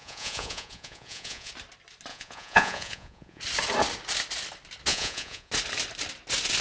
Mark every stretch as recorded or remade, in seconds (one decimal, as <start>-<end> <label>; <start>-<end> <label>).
0.0-1.5 remade; 1.5-2.1 recorded; 2.1-3.4 remade; 3.4-4.9 recorded; 4.9-5.5 remade; 5.5-6.6 recorded